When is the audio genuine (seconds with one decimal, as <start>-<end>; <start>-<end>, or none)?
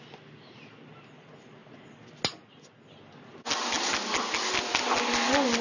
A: 0.0-5.6